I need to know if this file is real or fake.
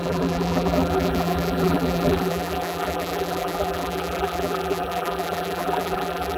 fake